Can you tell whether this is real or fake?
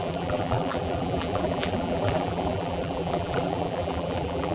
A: fake